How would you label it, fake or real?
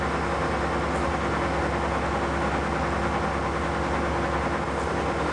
real